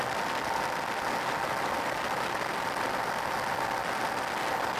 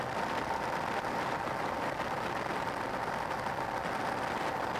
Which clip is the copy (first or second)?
second